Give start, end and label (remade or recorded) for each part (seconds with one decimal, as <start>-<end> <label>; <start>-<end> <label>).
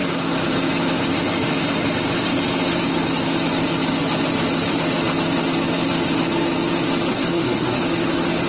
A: 0.0-7.1 recorded; 7.1-7.8 remade; 7.8-8.5 recorded